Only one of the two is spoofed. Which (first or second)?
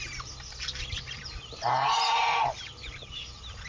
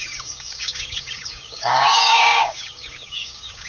second